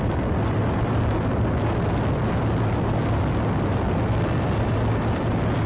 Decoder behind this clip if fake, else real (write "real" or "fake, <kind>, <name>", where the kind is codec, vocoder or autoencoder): real